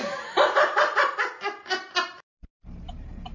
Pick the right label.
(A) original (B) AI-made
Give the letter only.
A